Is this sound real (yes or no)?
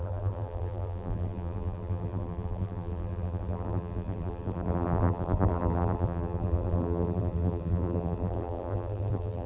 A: no